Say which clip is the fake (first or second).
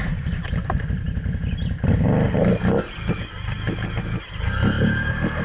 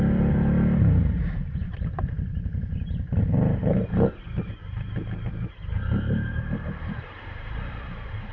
second